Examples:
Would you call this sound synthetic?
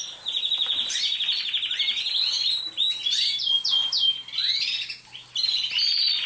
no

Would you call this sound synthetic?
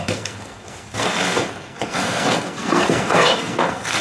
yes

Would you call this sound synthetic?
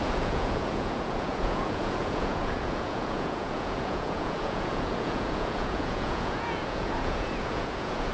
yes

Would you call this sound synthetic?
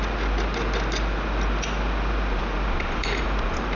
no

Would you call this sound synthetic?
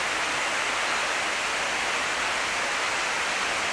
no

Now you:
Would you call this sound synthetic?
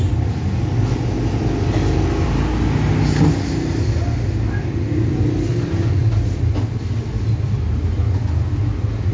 no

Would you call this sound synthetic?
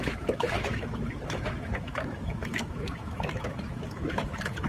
yes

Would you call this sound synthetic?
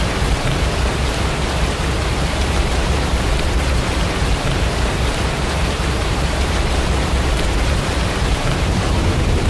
yes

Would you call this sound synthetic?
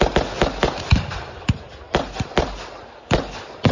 no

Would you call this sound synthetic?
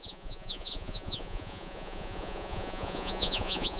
yes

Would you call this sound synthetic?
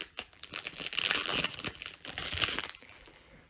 yes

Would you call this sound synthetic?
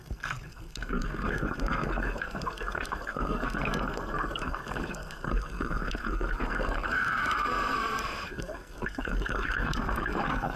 yes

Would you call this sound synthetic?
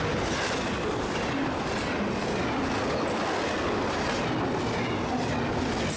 no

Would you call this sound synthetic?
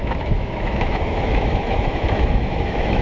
yes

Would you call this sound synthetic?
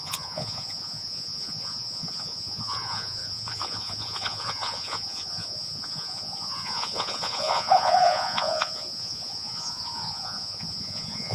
yes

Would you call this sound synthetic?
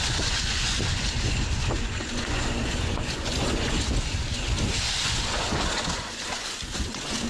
yes